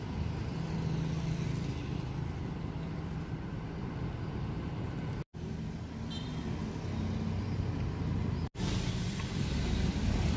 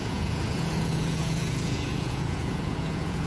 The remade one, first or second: second